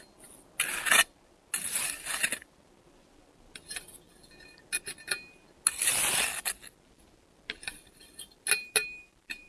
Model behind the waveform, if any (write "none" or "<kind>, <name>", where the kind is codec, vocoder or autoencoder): none